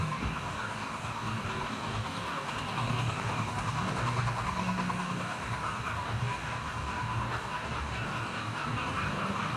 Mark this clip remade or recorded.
remade